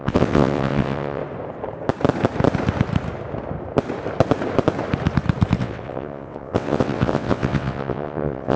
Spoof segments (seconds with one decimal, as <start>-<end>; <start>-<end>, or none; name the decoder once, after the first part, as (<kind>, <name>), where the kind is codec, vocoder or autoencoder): 0.0-1.2 (vocoder, WaveNeXt); 5.6-8.6